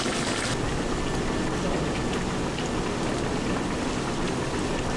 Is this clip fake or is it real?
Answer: real